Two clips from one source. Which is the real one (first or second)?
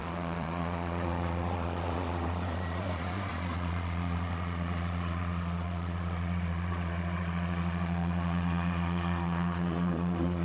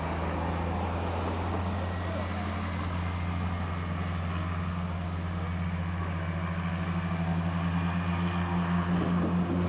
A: second